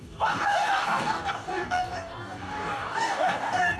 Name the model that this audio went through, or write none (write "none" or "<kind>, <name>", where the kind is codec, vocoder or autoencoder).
codec, DAC